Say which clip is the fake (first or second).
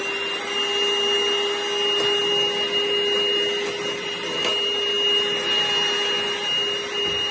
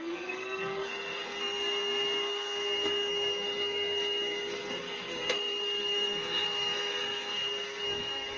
second